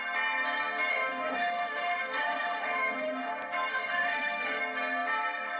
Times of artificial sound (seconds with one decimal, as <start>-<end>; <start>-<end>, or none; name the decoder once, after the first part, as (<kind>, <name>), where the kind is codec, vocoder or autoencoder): 0.9-3.3 (autoencoder, DAC-VAE); 3.7-4.6